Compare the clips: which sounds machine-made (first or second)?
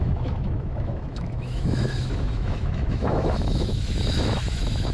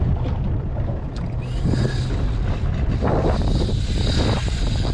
first